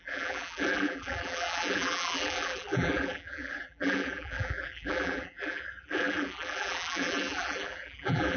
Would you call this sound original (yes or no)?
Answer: no